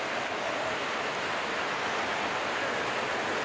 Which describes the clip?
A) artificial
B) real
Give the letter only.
B